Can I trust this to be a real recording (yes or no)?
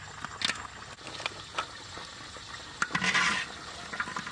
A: yes